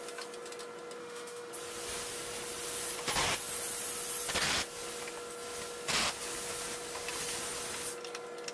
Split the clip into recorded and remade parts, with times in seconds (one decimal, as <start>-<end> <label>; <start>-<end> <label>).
0.0-1.0 recorded; 1.0-1.5 remade; 1.5-8.5 recorded